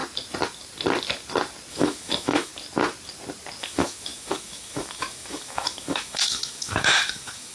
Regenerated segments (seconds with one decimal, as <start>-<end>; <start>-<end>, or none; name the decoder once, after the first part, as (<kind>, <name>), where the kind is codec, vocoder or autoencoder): 1.7-2.5 (autoencoder, DAC-VAE); 3.6-7.5

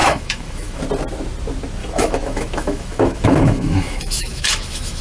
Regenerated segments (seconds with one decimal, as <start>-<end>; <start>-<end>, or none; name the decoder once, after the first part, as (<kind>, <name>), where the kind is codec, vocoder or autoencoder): 0.0-0.8 (autoencoder, DAC-VAE); 1.8-5.0

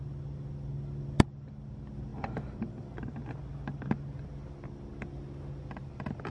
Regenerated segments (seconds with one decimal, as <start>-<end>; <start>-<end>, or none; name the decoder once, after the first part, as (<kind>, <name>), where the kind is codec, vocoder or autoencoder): none

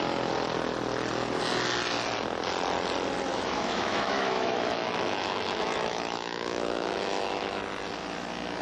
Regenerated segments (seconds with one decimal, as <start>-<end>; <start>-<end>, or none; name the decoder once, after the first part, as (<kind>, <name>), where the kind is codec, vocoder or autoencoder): 3.3-7.6 (autoencoder, DAC-VAE)

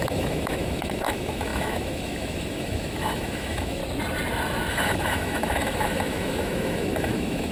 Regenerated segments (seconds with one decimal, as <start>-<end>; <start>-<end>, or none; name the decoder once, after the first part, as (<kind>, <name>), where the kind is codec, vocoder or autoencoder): 0.0-3.8 (autoencoder, DAC-VAE); 4.7-7.5

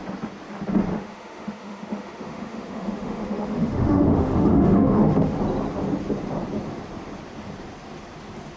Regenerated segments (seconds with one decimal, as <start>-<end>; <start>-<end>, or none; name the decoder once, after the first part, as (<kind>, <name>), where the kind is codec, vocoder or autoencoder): 0.9-5.4 (autoencoder, DAC-VAE)

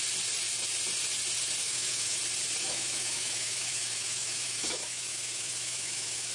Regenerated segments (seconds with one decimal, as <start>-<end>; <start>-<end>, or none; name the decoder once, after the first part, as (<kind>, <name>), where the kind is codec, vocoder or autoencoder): 1.6-2.2 (autoencoder, DAC-VAE); 2.6-6.3

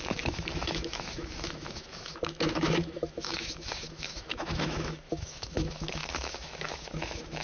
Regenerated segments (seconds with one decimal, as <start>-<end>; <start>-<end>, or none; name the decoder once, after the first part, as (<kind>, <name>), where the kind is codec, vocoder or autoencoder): 0.0-7.4 (autoencoder, DAC-VAE)